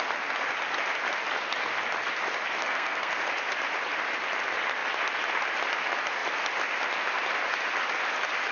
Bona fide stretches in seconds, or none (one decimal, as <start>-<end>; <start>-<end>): 0.0-2.6; 3.1-8.5